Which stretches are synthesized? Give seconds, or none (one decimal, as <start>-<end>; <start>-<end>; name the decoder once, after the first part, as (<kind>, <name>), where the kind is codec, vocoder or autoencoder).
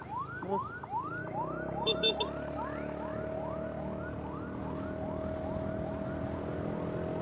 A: 1.2-2.2 (autoencoder, DAC-VAE)